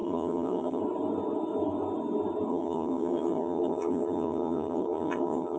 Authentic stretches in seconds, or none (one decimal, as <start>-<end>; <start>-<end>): 0.8-2.5